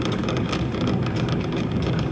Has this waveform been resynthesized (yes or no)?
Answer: yes